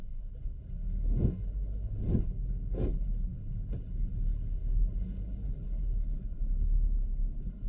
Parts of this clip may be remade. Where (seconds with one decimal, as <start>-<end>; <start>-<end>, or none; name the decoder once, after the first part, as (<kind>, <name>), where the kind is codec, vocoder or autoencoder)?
0.0-7.7 (codec, HILCodec)